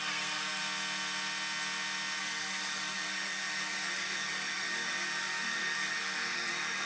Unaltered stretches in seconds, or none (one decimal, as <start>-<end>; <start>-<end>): 0.6-2.2